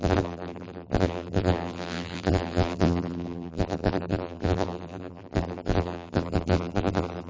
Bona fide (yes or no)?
no